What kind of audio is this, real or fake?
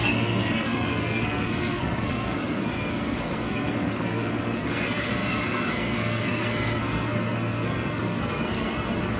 fake